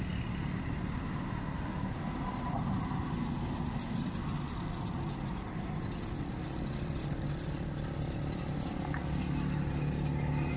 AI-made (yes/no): no